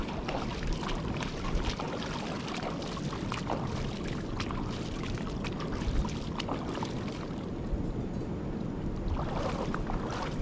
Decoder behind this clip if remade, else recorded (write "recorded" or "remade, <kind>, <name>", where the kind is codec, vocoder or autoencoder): recorded